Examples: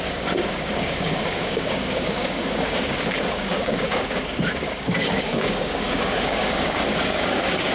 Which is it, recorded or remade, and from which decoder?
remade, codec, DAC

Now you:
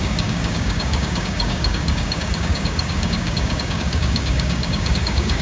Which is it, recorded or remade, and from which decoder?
remade, codec, DAC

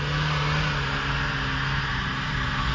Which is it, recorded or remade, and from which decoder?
recorded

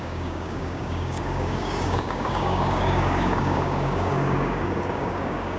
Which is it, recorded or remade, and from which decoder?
remade, codec, DAC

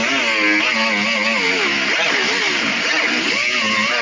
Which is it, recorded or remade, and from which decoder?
recorded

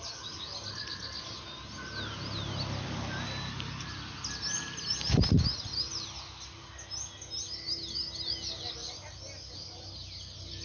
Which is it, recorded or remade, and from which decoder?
recorded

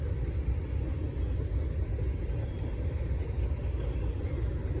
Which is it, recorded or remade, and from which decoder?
recorded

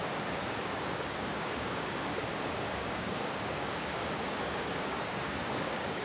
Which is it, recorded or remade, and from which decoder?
remade, codec, DAC